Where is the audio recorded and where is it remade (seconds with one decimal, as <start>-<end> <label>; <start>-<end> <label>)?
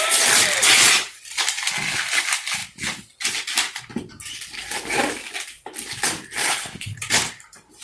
0.0-6.4 recorded; 6.4-7.0 remade; 7.0-7.8 recorded